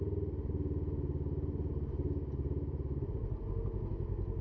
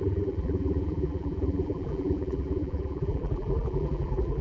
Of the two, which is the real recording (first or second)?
first